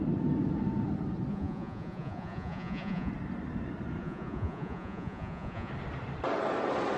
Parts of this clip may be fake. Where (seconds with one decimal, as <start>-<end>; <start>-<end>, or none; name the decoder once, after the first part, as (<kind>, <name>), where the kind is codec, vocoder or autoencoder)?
1.3-3.1 (vocoder, Vocos); 4.0-5.7